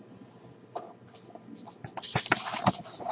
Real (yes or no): yes